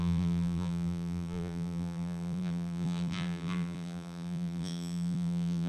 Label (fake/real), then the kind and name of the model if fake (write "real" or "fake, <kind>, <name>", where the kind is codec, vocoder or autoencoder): fake, vocoder, BigVGAN v2